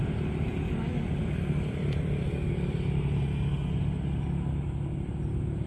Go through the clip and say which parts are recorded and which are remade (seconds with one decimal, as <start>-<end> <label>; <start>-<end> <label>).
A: 0.0-0.5 recorded; 0.5-2.5 remade; 2.5-4.5 recorded; 4.5-5.2 remade; 5.2-5.7 recorded